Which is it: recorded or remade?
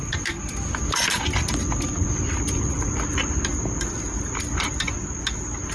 recorded